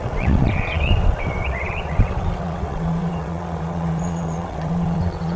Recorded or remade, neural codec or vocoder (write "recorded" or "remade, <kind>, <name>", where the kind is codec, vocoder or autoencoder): remade, vocoder, WaveNeXt